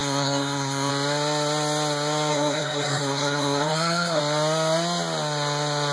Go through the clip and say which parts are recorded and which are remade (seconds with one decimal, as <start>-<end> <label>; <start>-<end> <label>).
0.0-0.9 remade; 0.9-2.3 recorded; 2.3-4.2 remade; 4.2-5.9 recorded